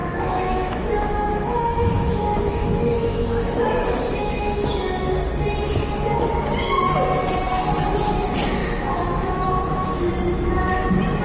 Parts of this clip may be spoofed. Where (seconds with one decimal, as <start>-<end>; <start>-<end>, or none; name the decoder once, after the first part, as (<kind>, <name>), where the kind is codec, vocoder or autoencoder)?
0.0-5.1 (autoencoder, DAC-VAE); 8.6-10.1